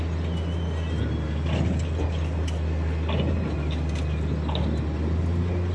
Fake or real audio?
real